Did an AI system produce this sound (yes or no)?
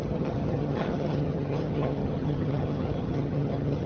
yes